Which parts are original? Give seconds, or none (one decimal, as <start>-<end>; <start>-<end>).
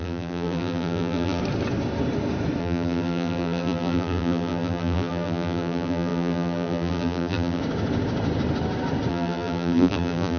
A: 1.4-2.6; 7.6-9.1